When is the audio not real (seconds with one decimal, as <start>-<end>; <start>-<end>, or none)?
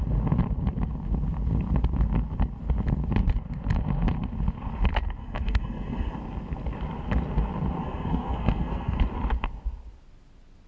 5.2-6.2; 7.8-9.0